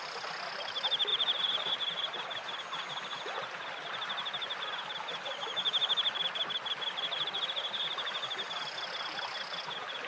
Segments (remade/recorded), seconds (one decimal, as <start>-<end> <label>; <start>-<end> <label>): 0.0-1.1 recorded; 1.1-1.7 remade; 1.7-10.1 recorded